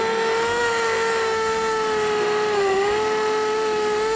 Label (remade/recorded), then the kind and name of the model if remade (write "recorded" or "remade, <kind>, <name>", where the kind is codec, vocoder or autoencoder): remade, autoencoder, DAC-VAE